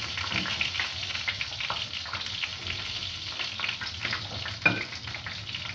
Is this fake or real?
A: real